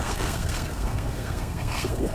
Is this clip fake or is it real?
fake